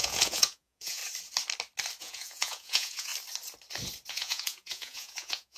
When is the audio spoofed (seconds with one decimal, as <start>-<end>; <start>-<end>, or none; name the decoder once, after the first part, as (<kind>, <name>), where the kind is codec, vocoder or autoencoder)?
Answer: 0.0-1.0 (vocoder, Vocos); 2.0-3.1; 4.1-5.6

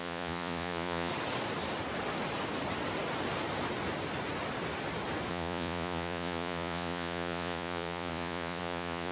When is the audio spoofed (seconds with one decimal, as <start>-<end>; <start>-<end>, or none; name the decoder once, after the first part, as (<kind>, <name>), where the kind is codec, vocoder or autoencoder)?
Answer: 0.0-1.1 (vocoder, Vocos); 5.3-9.1

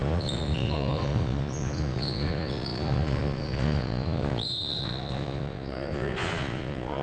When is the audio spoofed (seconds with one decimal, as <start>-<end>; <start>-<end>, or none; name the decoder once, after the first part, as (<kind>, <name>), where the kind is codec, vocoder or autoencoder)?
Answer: 0.0-7.0 (vocoder, Vocos)

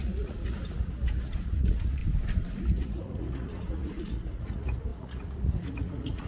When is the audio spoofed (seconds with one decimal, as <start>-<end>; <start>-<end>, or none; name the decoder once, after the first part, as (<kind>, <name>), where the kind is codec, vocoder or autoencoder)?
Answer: 0.0-2.0 (vocoder, Vocos); 2.6-6.3

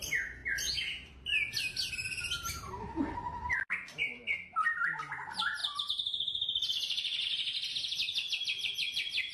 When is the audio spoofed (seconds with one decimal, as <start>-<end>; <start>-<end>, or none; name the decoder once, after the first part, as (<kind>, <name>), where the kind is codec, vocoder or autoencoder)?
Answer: none